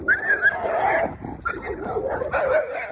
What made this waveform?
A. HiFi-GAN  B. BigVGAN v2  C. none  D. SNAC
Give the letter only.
C